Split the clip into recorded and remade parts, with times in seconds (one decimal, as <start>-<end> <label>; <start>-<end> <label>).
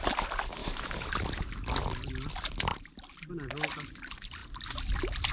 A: 0.0-0.6 recorded; 0.6-1.4 remade; 1.4-2.7 recorded; 2.7-3.3 remade; 3.3-5.3 recorded